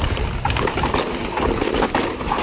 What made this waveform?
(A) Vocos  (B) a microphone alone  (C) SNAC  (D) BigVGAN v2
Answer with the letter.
B